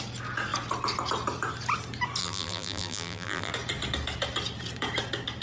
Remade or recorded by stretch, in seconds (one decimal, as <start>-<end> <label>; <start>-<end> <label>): 0.0-2.2 recorded; 2.2-3.5 remade; 3.5-5.4 recorded